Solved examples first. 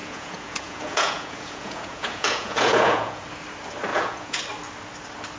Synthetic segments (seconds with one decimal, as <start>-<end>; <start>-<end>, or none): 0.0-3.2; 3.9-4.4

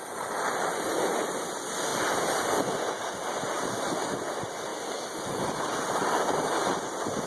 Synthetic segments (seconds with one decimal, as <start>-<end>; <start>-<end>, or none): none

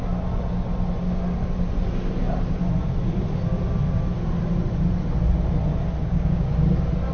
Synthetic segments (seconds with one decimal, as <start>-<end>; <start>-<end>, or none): 6.0-6.5

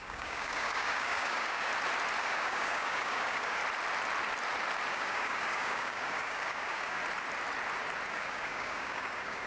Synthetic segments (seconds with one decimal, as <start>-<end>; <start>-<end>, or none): 0.0-1.7; 2.2-3.6; 4.9-7.0; 8.1-9.5

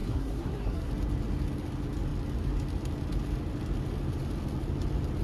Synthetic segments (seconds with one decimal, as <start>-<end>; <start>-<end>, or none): 0.0-0.9

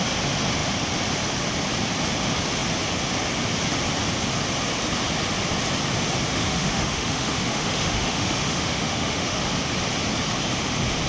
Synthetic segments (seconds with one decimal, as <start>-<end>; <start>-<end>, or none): 6.3-9.4

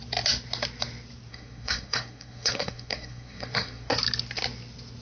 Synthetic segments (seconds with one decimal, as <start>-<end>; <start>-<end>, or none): 1.3-3.9

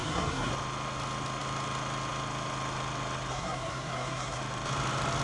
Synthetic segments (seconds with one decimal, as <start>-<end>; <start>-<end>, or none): 0.0-0.5; 3.3-4.4